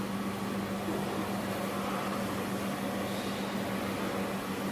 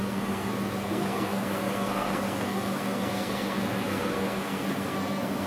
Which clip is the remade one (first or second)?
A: second